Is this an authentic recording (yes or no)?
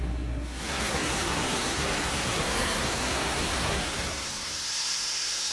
no